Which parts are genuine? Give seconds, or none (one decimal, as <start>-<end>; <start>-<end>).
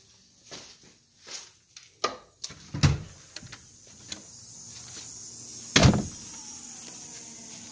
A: 0.0-7.7